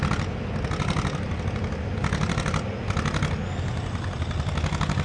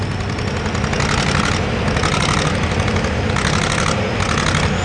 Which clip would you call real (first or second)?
second